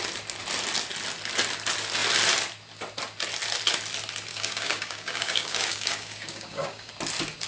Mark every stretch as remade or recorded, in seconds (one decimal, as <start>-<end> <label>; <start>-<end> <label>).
0.0-4.3 recorded; 4.3-6.9 remade; 6.9-7.5 recorded